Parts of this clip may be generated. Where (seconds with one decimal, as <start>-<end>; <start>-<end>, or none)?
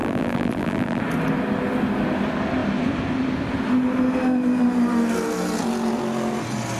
0.0-1.0